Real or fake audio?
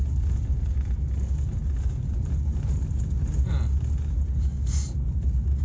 real